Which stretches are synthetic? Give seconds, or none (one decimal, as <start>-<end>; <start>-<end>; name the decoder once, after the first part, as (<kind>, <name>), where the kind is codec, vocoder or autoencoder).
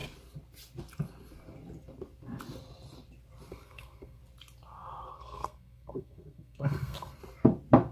3.5-4.2 (codec, SNAC); 5.1-7.2